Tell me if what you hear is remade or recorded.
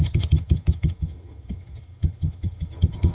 remade